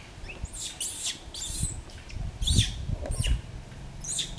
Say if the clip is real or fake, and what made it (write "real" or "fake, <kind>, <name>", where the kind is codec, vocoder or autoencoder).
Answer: real